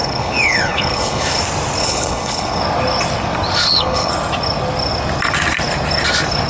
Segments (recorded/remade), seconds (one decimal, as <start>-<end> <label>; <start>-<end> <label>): 0.0-1.4 remade; 1.4-1.8 recorded; 1.8-2.6 remade; 2.6-3.6 recorded; 3.6-4.1 remade; 4.1-6.5 recorded